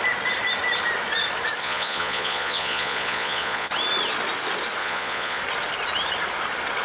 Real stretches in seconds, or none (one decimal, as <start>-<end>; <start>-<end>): 0.0-1.6; 3.7-4.8; 5.4-6.8